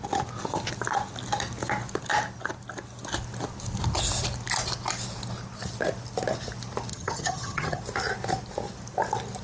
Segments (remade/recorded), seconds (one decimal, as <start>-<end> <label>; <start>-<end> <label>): 0.0-6.9 recorded; 6.9-7.8 remade; 7.8-9.4 recorded